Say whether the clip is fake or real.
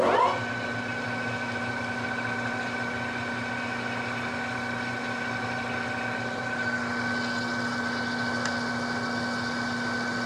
real